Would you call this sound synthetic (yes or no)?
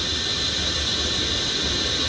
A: no